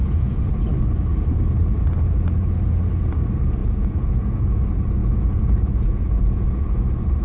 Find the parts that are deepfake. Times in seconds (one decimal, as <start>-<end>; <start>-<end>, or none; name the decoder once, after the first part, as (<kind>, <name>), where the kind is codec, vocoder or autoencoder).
0.0-0.5 (vocoder, Vocos); 3.6-4.6; 5.0-6.8